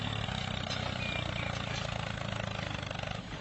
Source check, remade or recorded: recorded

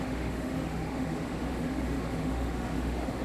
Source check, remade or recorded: remade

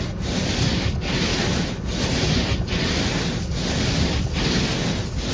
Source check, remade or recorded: recorded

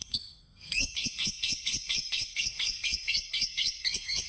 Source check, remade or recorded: remade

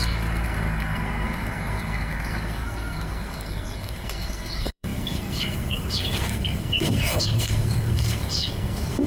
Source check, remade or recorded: remade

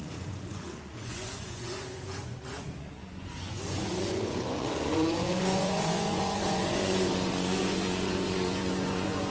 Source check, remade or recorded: remade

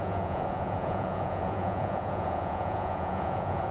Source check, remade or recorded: remade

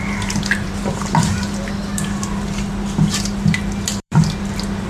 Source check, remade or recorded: remade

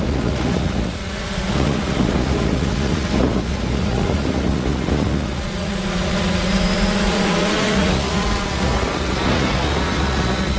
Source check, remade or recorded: remade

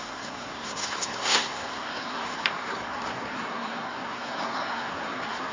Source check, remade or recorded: remade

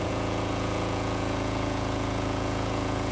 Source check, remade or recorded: remade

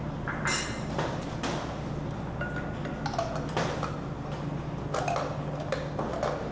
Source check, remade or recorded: recorded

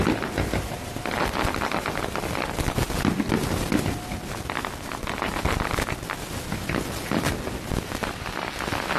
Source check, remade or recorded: recorded